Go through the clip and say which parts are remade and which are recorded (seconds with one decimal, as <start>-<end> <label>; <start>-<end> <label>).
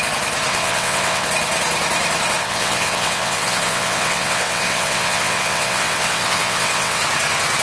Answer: 0.0-0.5 recorded; 0.5-1.3 remade; 1.3-2.4 recorded; 2.4-7.0 remade; 7.0-7.6 recorded